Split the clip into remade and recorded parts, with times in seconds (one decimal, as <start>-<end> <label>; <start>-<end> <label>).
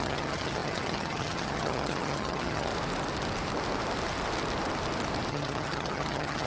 0.0-2.7 remade; 2.7-5.3 recorded; 5.3-6.5 remade